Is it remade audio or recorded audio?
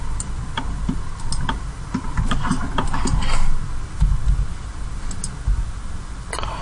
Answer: recorded